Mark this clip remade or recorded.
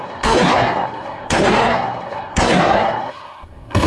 remade